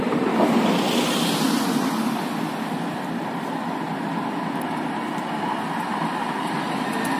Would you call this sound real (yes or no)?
yes